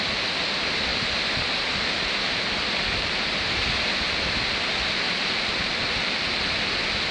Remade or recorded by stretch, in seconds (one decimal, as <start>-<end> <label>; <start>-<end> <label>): 0.0-7.1 recorded